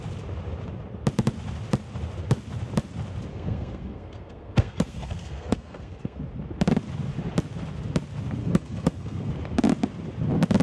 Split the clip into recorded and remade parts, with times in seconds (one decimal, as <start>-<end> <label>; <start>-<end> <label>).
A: 0.0-3.3 recorded; 3.3-6.2 remade; 6.2-8.4 recorded; 8.4-9.3 remade; 9.3-10.6 recorded